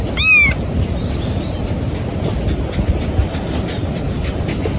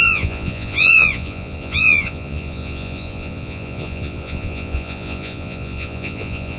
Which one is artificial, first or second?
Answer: second